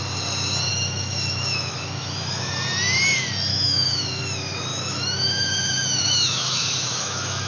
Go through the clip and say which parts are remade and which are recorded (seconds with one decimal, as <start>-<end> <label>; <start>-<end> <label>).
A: 0.0-0.7 recorded; 0.7-2.5 remade; 2.5-3.5 recorded; 3.5-4.2 remade; 4.2-4.7 recorded; 4.7-7.5 remade